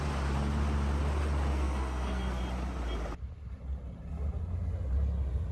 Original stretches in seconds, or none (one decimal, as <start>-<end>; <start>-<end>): 0.0-1.5; 2.4-5.5